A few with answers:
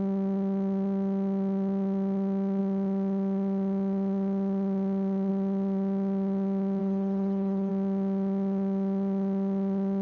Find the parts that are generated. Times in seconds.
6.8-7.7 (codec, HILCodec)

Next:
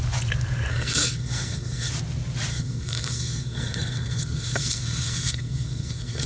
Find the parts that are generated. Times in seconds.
0.7-1.9 (codec, SNAC); 2.5-6.3

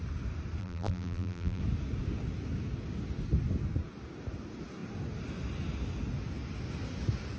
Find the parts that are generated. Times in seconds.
0.6-1.6 (vocoder, BigVGAN v2)

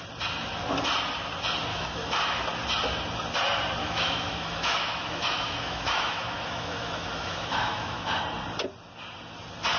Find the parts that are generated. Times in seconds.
1.7-2.4 (autoencoder, DAC-VAE); 3.8-8.2